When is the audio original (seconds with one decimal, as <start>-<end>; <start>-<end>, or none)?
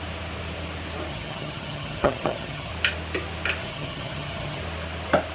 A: 0.0-1.1; 2.7-3.6; 4.6-5.3